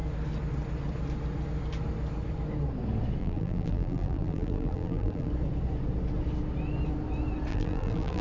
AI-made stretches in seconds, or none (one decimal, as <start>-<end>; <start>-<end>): 3.2-5.3; 7.5-8.2